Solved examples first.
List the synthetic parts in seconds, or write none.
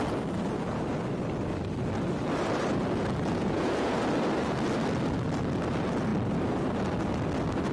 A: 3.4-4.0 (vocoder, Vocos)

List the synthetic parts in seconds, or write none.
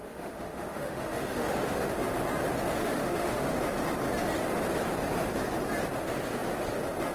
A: 0.0-1.9 (autoencoder, DAC-VAE); 2.8-3.6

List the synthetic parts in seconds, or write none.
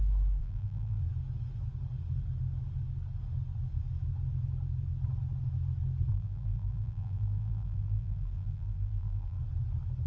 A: 0.4-1.0 (vocoder, BigVGAN v2); 6.1-9.4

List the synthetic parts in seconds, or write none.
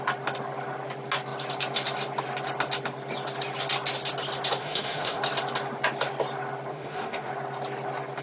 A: 4.6-5.2 (autoencoder, DAC-VAE); 6.7-7.3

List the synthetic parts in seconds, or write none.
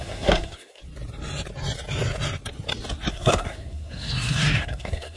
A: 0.0-0.8 (codec, SNAC); 3.1-5.2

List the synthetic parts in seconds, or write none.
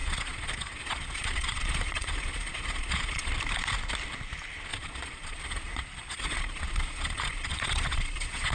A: 0.0-3.3 (vocoder, Vocos); 4.7-8.5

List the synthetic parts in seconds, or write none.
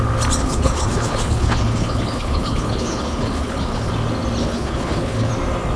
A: 0.4-3.9 (codec, HILCodec); 4.4-5.3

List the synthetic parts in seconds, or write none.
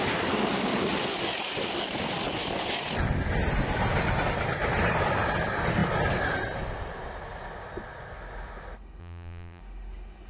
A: 9.0-9.6 (vocoder, BigVGAN v2)